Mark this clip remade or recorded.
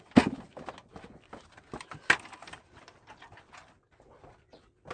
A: recorded